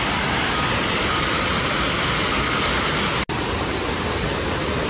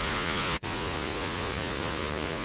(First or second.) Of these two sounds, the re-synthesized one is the second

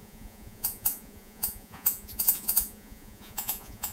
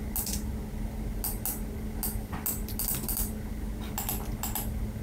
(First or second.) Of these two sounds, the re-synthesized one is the first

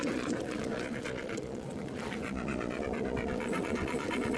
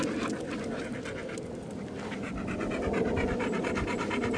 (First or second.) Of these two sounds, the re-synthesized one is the first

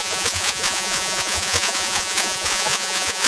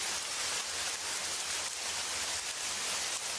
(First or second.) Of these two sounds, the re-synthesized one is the first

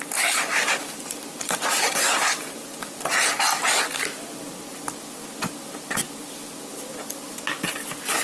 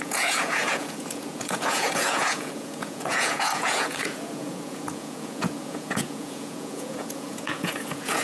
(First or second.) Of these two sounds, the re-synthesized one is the second